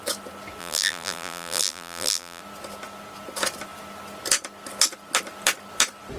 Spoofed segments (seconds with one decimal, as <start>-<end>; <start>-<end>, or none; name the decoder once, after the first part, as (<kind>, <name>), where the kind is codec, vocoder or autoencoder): 0.6-2.4 (vocoder, BigVGAN v2)

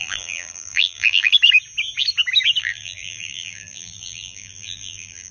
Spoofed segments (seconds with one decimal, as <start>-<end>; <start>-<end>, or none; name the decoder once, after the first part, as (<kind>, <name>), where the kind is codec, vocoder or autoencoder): 0.0-1.3 (vocoder, BigVGAN v2); 2.6-5.3

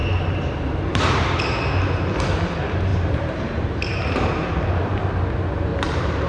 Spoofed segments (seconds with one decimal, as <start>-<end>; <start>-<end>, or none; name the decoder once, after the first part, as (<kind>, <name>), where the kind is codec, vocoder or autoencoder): 0.0-1.0 (vocoder, BigVGAN v2); 2.9-4.7; 5.7-6.3

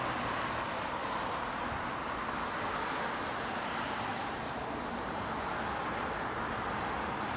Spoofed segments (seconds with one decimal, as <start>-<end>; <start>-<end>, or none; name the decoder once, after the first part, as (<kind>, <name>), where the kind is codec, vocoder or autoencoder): 4.2-5.3 (vocoder, BigVGAN v2)

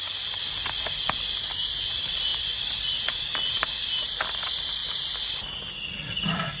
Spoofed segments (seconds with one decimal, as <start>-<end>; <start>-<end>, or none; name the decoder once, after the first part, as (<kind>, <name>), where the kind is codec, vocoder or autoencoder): 0.0-6.6 (vocoder, BigVGAN v2)